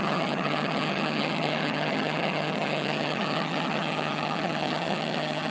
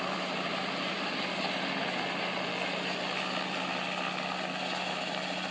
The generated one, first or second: first